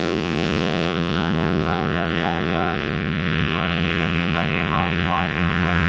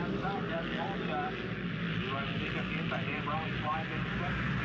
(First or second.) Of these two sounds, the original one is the second